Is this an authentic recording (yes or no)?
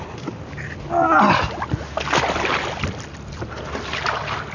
yes